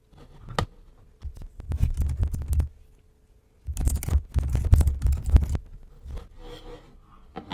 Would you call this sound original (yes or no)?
yes